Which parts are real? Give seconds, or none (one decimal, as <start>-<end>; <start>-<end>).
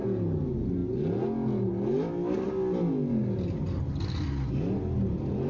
0.0-5.5